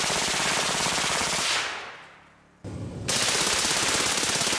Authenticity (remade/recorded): recorded